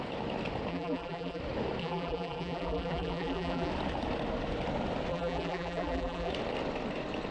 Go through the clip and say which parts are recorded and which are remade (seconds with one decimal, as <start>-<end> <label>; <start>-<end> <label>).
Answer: 0.0-0.7 recorded; 0.7-1.4 remade; 1.4-1.8 recorded; 1.8-3.7 remade; 3.7-5.1 recorded; 5.1-6.3 remade; 6.3-7.3 recorded

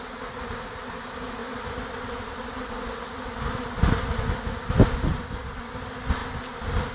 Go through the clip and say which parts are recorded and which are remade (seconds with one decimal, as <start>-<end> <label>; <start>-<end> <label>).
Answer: 0.0-6.9 recorded

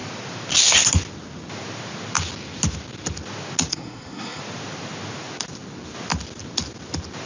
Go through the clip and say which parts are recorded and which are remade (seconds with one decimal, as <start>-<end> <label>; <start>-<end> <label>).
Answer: 0.0-3.7 recorded; 3.7-4.4 remade; 4.4-7.3 recorded

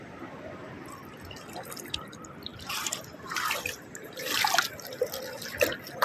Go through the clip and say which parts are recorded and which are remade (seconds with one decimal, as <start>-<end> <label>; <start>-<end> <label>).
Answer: 0.0-2.5 recorded; 2.5-4.5 remade; 4.5-6.0 recorded

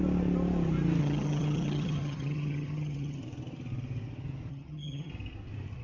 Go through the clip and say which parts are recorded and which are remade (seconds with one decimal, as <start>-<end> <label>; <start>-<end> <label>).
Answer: 0.0-1.0 recorded; 1.0-3.2 remade; 3.2-4.5 recorded; 4.5-5.1 remade; 5.1-5.8 recorded

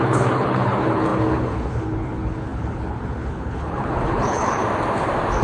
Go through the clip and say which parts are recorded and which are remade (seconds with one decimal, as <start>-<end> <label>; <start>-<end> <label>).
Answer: 0.0-4.6 remade; 4.6-5.4 recorded